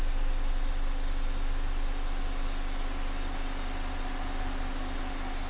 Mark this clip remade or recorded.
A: recorded